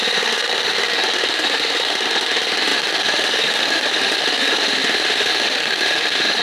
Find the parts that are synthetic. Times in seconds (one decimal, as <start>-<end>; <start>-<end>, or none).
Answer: 0.0-6.4